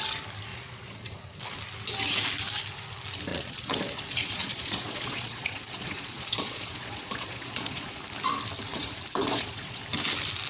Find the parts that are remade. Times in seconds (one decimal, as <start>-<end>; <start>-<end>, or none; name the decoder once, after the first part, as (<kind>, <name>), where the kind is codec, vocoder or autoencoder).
0.5-1.2 (vocoder, Vocos); 3.3-8.0; 8.7-9.8